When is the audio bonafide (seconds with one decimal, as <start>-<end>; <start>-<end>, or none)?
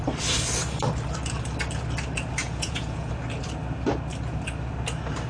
0.0-2.4; 3.1-5.3